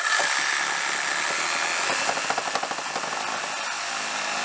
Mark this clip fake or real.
real